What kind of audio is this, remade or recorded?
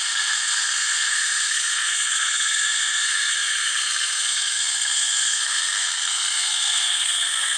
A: remade